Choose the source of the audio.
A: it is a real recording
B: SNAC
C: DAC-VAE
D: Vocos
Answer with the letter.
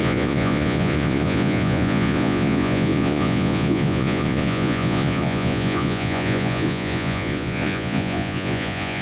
D